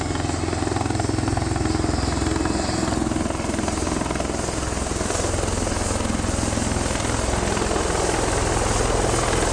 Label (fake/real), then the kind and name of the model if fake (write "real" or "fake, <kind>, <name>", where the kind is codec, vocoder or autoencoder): real